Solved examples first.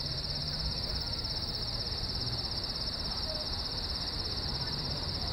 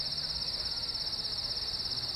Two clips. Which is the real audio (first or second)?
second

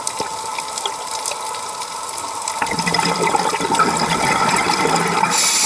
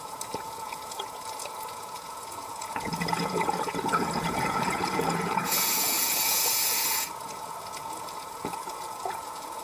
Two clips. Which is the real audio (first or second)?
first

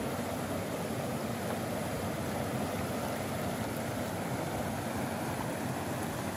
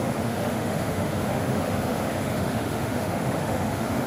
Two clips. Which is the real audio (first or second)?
first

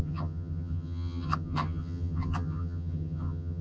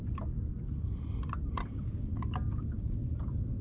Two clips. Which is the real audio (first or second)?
second